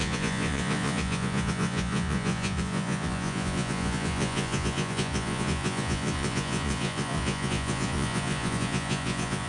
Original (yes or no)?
no